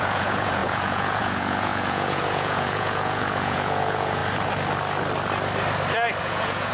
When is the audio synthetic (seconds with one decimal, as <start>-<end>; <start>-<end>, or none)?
0.0-4.2; 6.2-6.7